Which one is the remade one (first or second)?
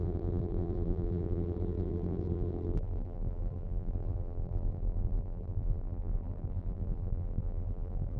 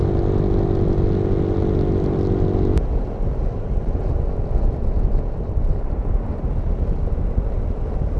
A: first